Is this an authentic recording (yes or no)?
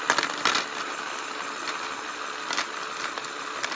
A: yes